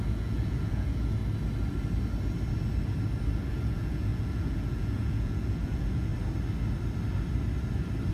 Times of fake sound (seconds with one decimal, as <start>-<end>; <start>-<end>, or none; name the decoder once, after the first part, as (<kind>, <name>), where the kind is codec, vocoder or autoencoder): 0.0-1.2 (vocoder, Vocos); 3.5-6.1